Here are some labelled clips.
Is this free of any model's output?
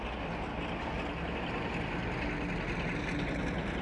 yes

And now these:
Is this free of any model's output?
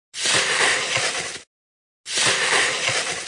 yes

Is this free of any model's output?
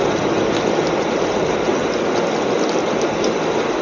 yes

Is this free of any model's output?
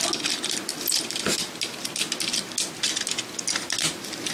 yes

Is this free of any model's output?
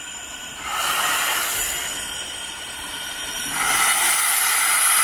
yes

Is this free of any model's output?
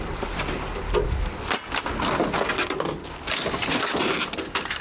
yes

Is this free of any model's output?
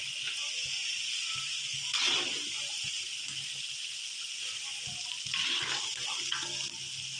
yes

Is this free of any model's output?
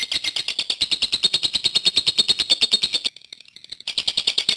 yes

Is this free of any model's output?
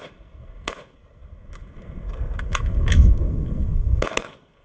no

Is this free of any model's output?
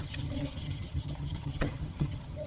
no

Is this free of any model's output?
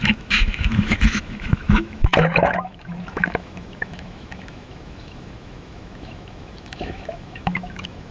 no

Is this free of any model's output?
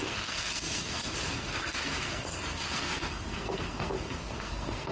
no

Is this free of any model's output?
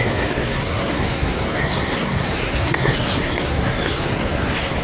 no